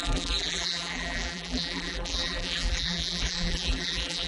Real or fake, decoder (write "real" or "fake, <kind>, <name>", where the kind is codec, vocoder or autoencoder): fake, vocoder, BigVGAN v2